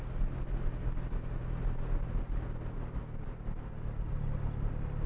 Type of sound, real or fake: real